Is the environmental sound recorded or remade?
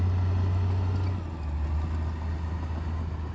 recorded